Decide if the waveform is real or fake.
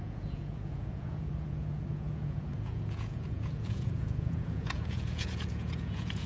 fake